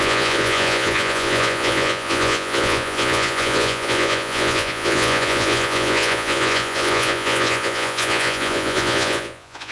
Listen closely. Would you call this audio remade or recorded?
remade